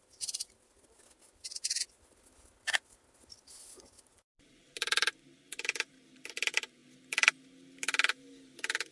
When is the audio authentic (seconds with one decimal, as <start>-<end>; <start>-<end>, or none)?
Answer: 0.0-4.1; 6.2-6.8; 7.3-8.9